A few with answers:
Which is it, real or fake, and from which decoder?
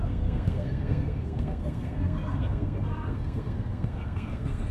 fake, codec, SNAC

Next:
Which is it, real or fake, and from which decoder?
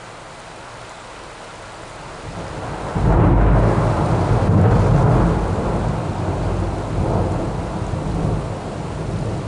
real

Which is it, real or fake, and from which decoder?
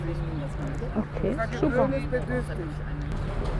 real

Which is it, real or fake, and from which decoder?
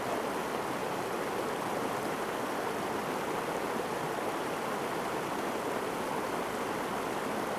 real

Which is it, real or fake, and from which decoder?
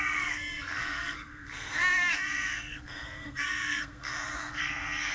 fake, codec, SNAC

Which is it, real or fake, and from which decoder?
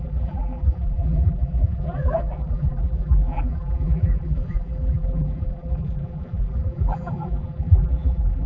fake, vocoder, BigVGAN v2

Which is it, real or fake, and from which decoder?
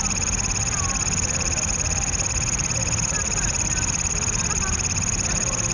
real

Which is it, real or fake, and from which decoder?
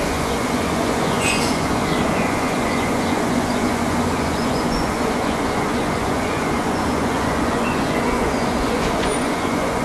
fake, vocoder, Vocos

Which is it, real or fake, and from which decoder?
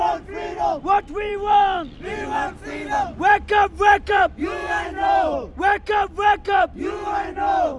fake, vocoder, BigVGAN v2